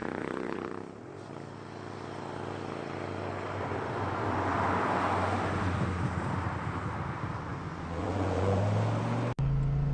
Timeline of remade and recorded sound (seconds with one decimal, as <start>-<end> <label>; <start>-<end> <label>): 0.0-0.7 remade; 0.7-7.5 recorded; 7.5-8.6 remade; 8.6-9.9 recorded